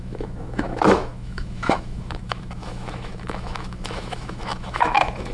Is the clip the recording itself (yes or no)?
no